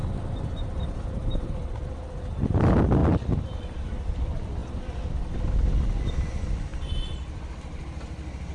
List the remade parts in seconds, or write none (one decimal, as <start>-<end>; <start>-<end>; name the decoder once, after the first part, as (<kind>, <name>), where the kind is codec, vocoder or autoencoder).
1.2-1.8 (vocoder, BigVGAN v2); 6.7-7.5